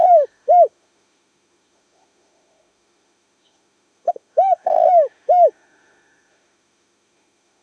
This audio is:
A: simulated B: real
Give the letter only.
A